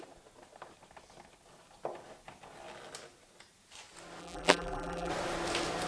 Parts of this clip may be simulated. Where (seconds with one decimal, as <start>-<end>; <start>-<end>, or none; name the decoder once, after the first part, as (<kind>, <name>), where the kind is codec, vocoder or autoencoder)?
4.2-5.1 (vocoder, BigVGAN v2)